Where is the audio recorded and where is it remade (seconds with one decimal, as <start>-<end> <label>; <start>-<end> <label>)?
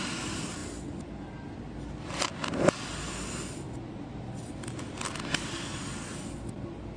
0.0-7.0 recorded